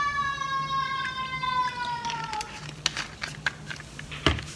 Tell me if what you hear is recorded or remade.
recorded